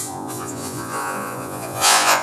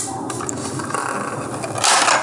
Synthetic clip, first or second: first